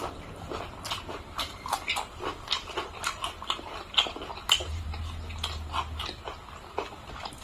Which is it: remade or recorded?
recorded